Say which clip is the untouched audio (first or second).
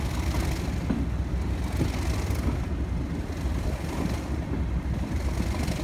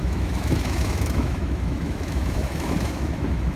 first